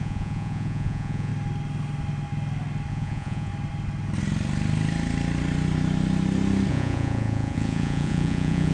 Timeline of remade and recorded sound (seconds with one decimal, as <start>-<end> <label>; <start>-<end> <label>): 0.0-1.3 remade; 1.3-2.9 recorded; 2.9-3.5 remade; 3.5-6.7 recorded; 6.7-8.7 remade